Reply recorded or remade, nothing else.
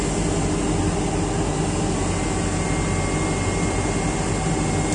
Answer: recorded